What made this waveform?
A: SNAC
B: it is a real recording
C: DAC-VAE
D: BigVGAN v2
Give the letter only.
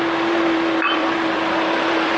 D